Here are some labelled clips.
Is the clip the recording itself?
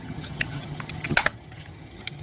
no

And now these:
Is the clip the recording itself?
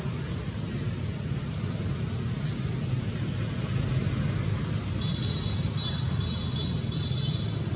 yes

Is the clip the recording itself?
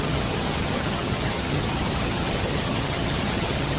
no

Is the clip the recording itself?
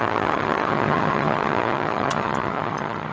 no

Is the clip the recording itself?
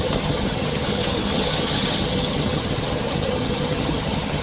no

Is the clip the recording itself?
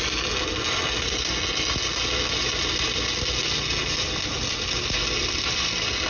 yes